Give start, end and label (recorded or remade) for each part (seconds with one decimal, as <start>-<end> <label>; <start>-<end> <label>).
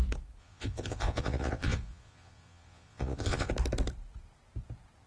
0.0-0.4 recorded; 0.4-3.5 remade; 3.5-5.1 recorded